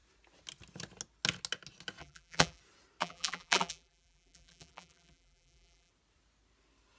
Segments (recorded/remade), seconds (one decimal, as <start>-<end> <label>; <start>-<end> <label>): 0.0-2.0 recorded; 2.0-2.6 remade; 2.6-3.0 recorded; 3.0-5.9 remade; 5.9-7.0 recorded